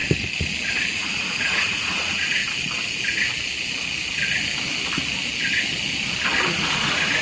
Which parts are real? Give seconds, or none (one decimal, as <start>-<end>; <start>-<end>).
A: 0.0-0.9; 2.4-6.5